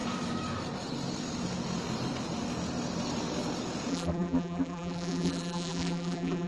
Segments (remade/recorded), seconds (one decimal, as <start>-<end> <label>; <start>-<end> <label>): 0.0-3.9 recorded; 3.9-6.5 remade